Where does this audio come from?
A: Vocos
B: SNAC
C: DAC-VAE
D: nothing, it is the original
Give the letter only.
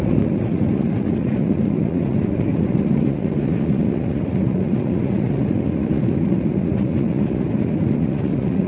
A